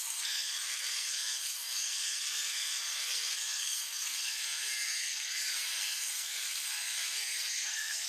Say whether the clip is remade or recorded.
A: remade